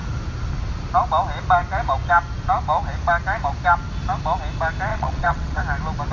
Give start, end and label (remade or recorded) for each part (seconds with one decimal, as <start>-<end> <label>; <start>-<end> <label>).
0.0-4.9 recorded; 4.9-5.6 remade; 5.6-6.1 recorded